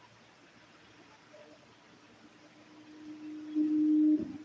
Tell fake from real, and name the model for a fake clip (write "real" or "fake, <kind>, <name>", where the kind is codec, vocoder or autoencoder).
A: real